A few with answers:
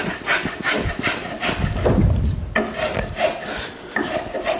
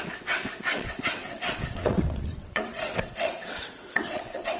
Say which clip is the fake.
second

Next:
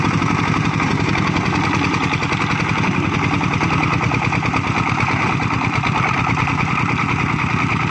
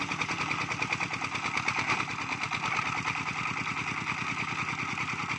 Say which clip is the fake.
first